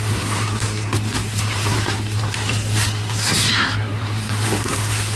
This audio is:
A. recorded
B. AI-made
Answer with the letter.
B